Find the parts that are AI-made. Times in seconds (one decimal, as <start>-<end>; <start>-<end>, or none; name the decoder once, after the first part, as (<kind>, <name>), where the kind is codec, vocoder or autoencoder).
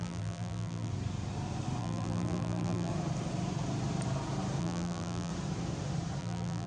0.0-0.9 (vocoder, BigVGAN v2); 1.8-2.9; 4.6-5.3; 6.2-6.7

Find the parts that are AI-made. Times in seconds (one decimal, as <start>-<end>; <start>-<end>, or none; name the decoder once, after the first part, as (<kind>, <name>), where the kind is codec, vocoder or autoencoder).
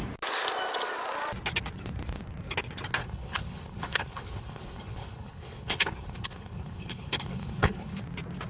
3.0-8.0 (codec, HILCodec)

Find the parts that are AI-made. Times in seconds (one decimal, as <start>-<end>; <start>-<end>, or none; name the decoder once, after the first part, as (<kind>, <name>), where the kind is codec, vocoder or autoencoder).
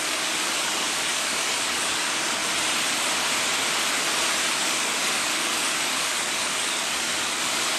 0.0-2.4 (codec, DAC); 4.6-7.8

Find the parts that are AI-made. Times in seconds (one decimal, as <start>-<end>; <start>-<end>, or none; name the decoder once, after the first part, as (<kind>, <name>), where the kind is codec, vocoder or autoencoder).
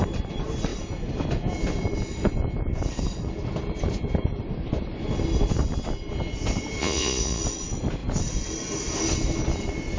6.8-7.4 (vocoder, Vocos)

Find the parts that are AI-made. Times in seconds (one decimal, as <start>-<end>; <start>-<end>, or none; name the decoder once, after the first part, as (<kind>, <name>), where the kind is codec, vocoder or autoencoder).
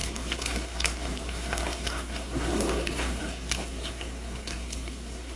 0.0-5.4 (codec, SNAC)